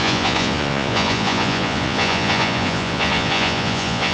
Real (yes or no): no